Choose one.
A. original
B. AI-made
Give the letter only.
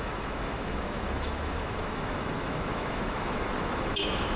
B